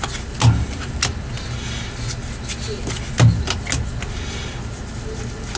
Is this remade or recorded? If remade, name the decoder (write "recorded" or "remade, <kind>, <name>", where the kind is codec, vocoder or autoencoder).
recorded